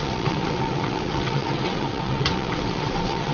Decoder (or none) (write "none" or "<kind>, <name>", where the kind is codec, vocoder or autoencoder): vocoder, WaveNeXt